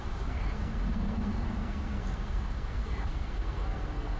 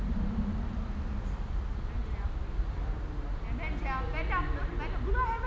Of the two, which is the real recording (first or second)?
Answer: second